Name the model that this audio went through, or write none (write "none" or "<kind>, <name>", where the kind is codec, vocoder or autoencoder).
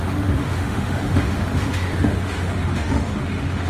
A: autoencoder, DAC-VAE